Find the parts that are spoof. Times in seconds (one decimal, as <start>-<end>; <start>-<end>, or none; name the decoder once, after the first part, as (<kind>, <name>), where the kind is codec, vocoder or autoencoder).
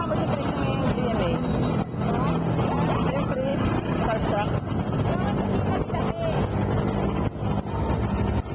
none